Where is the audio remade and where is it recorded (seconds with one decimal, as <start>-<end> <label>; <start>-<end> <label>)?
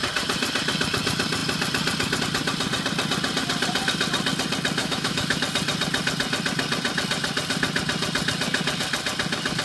0.0-4.8 recorded; 4.8-5.4 remade; 5.4-9.6 recorded